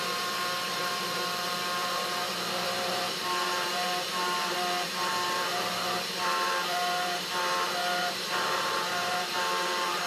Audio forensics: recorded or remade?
remade